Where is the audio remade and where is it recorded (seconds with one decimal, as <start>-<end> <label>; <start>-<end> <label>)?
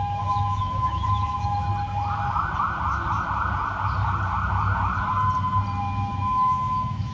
0.0-1.7 remade; 1.7-5.8 recorded; 5.8-7.1 remade